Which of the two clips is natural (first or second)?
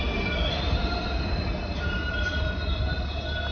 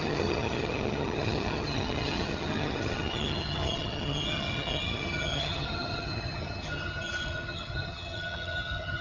first